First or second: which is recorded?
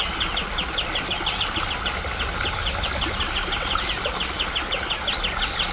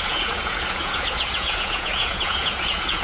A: first